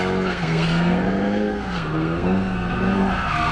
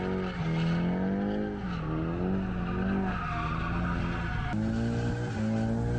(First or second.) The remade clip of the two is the first